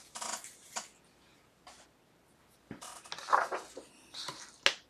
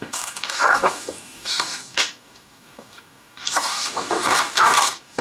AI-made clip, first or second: second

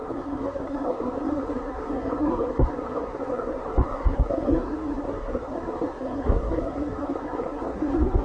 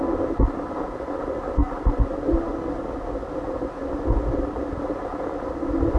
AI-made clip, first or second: first